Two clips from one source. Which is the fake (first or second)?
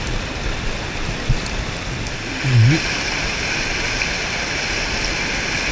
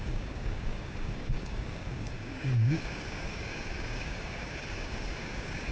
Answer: second